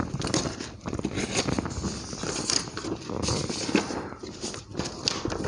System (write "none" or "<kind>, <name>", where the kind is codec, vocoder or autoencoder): none